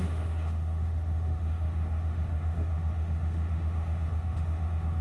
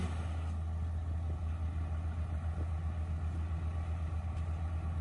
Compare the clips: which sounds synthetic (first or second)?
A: first